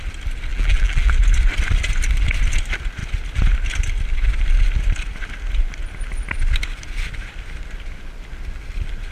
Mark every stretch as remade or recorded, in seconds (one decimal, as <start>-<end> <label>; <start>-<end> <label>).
0.0-0.5 recorded; 0.5-1.1 remade; 1.1-9.1 recorded